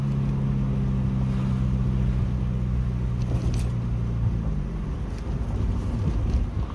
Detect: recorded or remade recorded